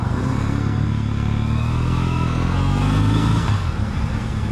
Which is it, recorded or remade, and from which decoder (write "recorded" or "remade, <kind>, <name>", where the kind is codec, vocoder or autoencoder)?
remade, codec, SNAC